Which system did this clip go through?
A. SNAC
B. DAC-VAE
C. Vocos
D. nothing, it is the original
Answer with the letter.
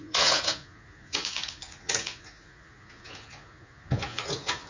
C